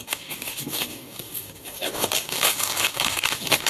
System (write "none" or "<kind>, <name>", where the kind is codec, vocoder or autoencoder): codec, DAC